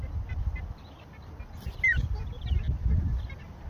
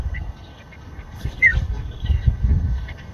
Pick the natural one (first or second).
first